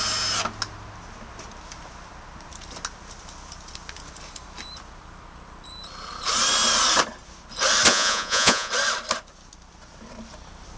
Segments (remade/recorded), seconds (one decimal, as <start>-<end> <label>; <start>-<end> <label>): 0.0-7.9 recorded; 7.9-8.7 remade; 8.7-10.8 recorded